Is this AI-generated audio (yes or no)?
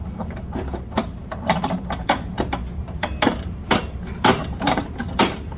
yes